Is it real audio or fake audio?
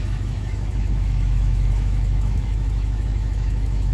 fake